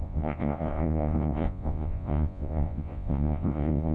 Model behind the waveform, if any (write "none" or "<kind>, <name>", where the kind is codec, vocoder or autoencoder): vocoder, Vocos